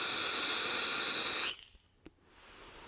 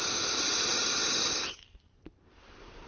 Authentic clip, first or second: first